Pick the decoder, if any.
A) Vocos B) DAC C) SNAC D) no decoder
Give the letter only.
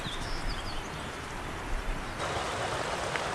D